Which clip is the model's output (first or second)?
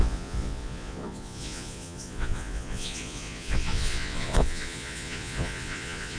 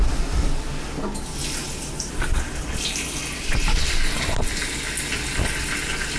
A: first